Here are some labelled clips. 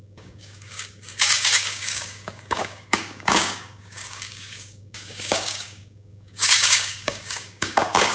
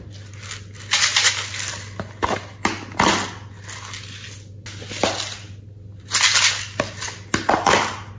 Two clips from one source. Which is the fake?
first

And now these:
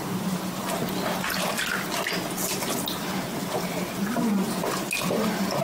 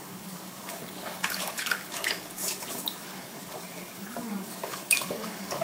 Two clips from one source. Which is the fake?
second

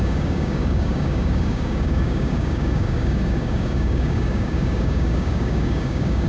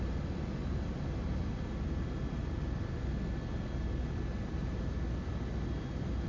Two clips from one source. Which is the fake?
first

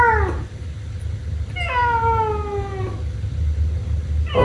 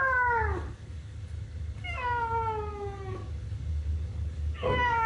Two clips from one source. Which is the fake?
second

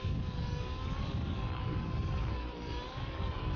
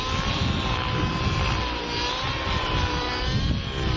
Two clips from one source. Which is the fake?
first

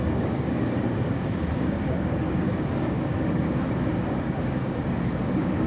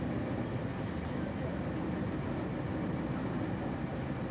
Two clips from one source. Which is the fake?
first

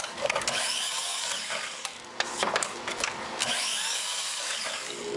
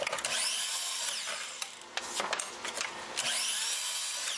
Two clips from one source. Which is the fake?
first